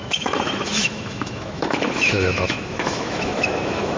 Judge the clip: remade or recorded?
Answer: remade